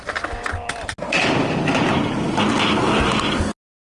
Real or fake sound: real